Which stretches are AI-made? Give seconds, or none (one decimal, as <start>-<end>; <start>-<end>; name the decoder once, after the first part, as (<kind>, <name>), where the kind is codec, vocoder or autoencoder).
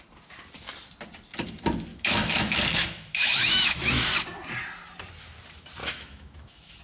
1.9-4.1 (autoencoder, DAC-VAE); 5.8-6.8